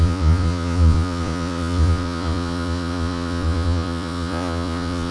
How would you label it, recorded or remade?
remade